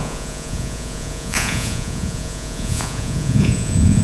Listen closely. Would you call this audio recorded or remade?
remade